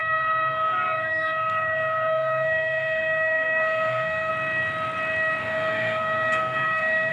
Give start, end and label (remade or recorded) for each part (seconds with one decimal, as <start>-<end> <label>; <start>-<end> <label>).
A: 0.0-4.3 remade; 4.3-5.4 recorded; 5.4-7.1 remade